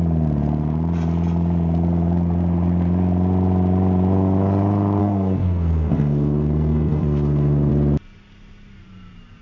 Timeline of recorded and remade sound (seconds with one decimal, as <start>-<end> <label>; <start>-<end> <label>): 0.0-5.0 recorded; 5.0-7.7 remade; 7.7-9.4 recorded